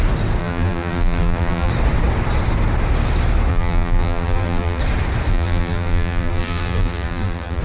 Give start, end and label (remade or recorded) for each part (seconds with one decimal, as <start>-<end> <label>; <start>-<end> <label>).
0.0-0.4 recorded; 0.4-1.7 remade; 1.7-3.5 recorded; 3.5-4.8 remade; 4.8-5.3 recorded; 5.3-7.6 remade